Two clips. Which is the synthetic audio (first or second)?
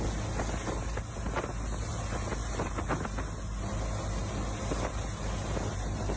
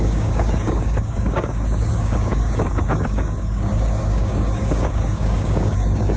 second